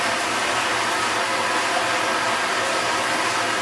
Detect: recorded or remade recorded